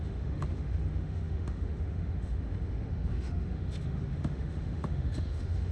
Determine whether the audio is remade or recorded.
remade